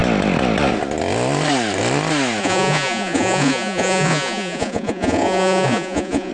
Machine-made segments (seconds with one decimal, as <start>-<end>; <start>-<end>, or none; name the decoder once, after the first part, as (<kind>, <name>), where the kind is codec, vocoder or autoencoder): 2.4-6.3 (vocoder, Vocos)

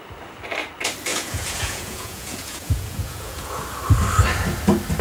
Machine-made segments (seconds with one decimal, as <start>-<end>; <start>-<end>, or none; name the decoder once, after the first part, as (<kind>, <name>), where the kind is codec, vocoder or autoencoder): 1.1-3.6 (vocoder, Vocos)

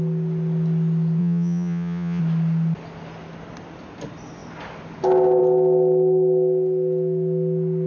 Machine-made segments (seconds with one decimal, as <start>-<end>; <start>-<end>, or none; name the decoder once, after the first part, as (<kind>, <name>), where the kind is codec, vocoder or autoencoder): 1.2-2.2 (vocoder, Vocos)

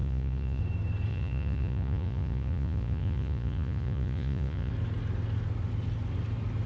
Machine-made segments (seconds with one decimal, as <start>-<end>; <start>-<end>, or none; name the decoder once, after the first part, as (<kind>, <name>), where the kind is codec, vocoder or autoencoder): 0.0-0.6 (vocoder, Vocos); 1.1-4.7

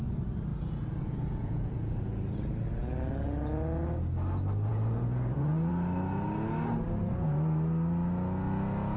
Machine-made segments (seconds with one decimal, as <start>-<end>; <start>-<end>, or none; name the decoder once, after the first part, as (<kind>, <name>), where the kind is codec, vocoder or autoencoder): 0.5-2.3 (vocoder, Vocos); 4.7-5.7